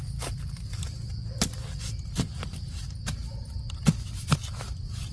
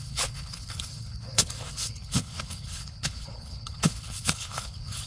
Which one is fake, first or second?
second